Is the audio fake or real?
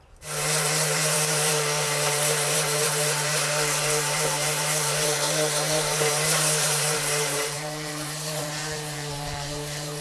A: fake